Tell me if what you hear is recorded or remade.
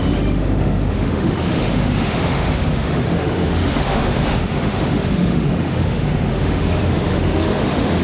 remade